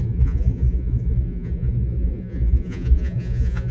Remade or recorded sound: remade